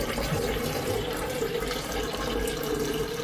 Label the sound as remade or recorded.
remade